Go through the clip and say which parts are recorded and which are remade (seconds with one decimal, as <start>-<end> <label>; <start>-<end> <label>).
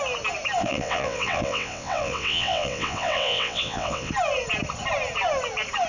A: 0.0-0.6 recorded; 0.6-4.1 remade; 4.1-5.9 recorded